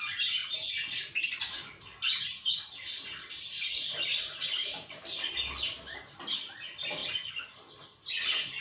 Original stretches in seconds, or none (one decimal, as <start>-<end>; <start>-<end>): 0.0-8.6